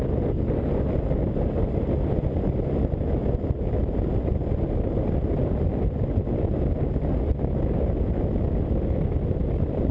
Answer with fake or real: real